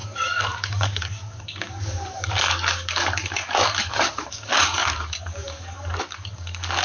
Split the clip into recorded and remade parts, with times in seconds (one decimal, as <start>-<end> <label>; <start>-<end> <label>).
0.0-6.8 remade